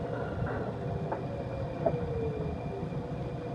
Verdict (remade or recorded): recorded